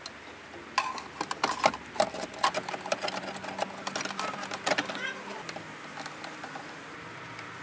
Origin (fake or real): real